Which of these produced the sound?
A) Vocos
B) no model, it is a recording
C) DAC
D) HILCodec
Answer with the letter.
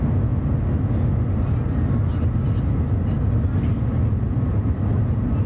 B